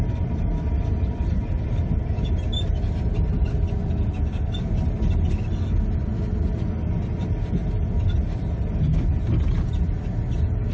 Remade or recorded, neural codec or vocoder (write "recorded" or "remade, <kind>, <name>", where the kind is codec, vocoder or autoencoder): recorded